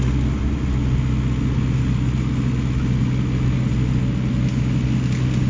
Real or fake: real